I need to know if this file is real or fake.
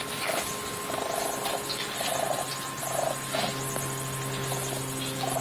real